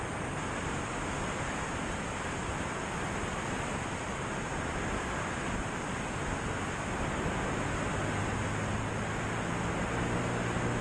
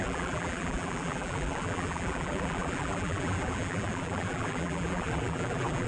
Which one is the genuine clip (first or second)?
first